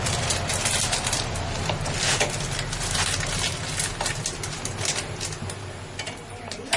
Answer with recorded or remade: recorded